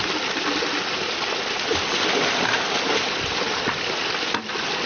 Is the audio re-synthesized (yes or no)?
no